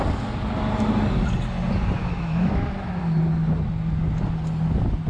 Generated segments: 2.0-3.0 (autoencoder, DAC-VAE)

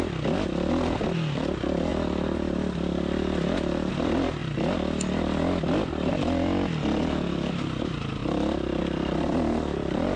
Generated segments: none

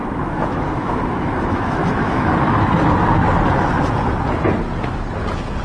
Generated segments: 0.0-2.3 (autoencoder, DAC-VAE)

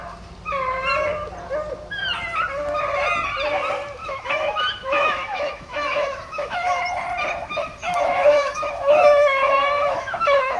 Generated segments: 4.0-6.8 (autoencoder, DAC-VAE); 7.8-10.6